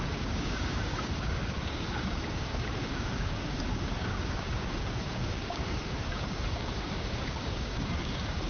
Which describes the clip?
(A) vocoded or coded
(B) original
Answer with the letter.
A